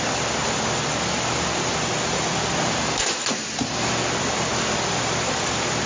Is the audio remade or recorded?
recorded